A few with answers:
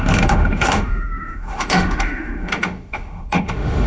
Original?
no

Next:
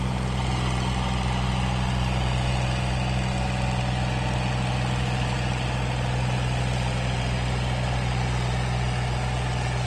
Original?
yes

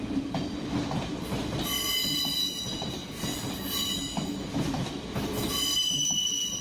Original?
yes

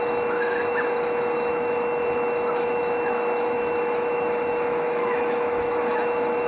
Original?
no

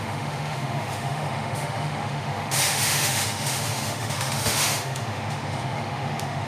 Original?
no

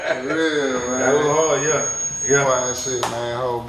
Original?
yes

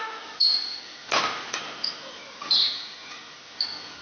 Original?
yes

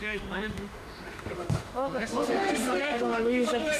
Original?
no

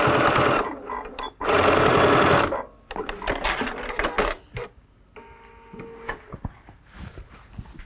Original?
yes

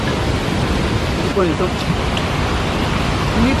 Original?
yes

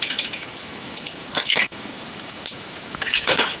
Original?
no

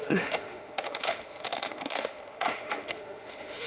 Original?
no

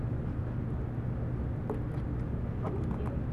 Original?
yes